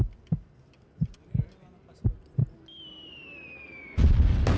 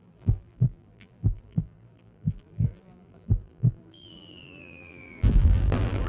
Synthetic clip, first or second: second